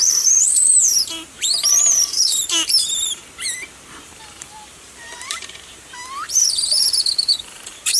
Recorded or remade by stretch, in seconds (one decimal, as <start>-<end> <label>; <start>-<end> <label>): 0.0-3.2 remade; 3.2-4.0 recorded; 4.0-8.0 remade